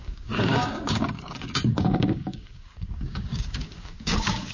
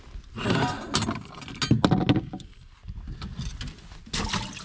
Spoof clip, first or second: first